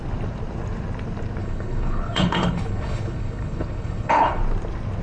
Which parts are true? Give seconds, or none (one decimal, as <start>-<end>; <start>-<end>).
0.0-1.4; 4.4-5.0